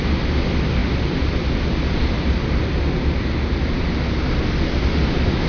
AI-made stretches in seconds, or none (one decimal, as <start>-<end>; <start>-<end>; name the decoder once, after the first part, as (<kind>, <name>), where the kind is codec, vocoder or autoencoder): none

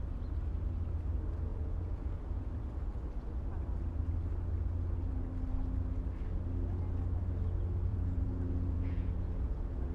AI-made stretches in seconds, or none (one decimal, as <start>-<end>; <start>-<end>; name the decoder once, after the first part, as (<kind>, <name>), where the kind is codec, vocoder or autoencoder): 1.5-2.5 (vocoder, Vocos); 7.9-9.9